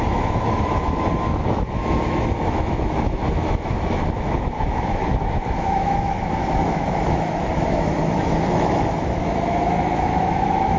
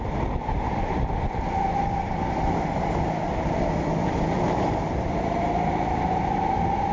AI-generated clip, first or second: first